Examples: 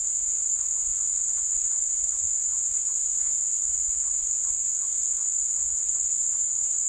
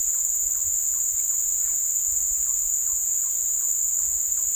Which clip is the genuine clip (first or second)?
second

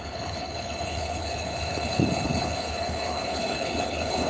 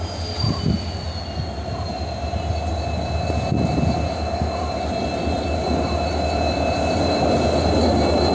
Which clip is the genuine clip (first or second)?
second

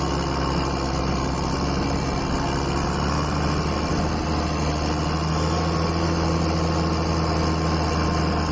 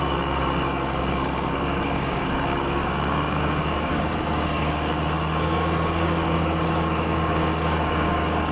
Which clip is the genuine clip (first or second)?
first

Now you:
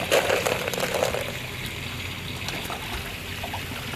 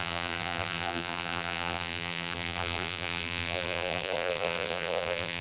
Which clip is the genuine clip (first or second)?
first